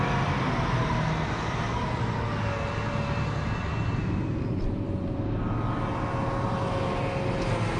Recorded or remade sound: recorded